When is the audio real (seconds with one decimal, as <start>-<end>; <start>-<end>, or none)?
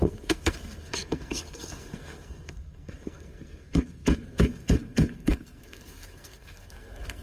none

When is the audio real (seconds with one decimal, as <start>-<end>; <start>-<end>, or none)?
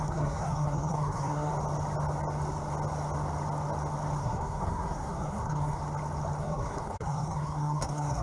1.5-4.2; 5.8-6.4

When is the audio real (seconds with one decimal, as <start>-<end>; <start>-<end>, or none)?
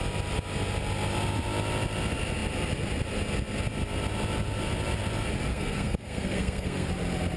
0.0-5.5; 6.9-7.4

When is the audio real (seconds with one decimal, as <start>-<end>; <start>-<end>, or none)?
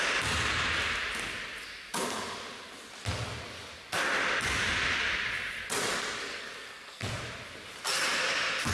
0.0-6.3; 7.1-8.7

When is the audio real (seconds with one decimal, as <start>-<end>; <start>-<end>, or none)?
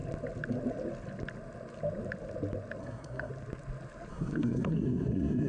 0.0-2.8; 3.3-4.1